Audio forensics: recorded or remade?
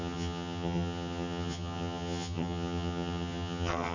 remade